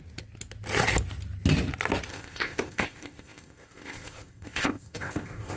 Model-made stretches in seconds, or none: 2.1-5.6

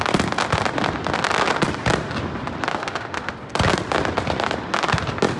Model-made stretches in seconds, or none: 2.7-3.3

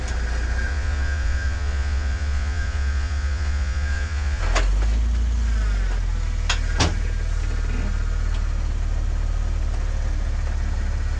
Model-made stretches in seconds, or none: 0.7-4.4

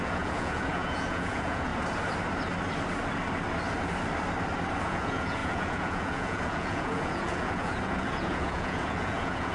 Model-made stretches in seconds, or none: 0.0-1.7; 4.8-9.5

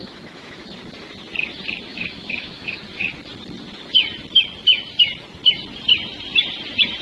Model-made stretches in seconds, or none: 0.0-0.8; 1.9-2.8

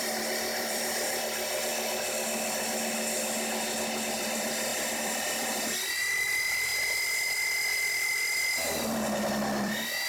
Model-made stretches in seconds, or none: 0.0-1.7; 4.2-10.1